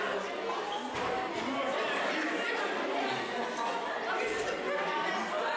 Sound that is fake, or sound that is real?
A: real